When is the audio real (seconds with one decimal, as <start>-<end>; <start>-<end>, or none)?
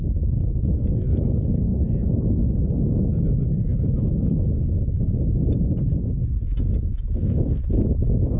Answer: 0.0-1.7; 2.2-8.4